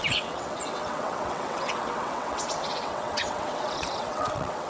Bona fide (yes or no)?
no